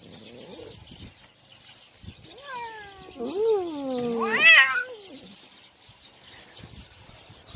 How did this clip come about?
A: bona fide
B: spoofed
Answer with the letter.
A